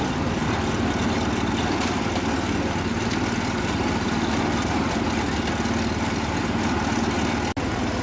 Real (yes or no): yes